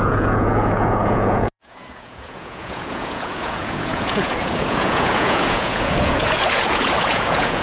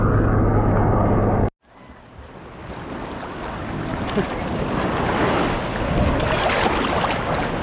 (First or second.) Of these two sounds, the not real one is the first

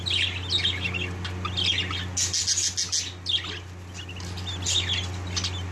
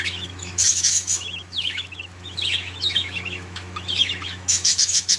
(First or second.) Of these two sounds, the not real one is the second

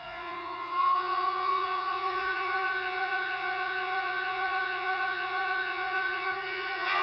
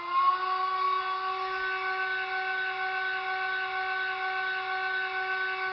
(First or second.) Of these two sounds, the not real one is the first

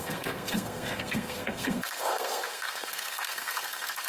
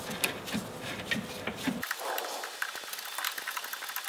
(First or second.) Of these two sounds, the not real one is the first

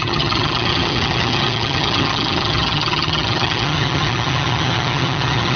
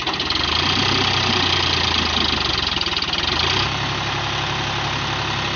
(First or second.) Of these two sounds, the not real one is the first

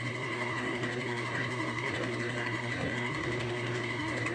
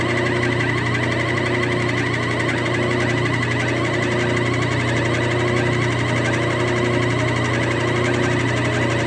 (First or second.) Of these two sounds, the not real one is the first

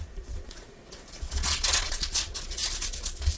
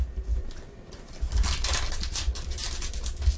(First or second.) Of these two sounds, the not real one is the first